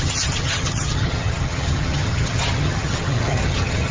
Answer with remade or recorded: remade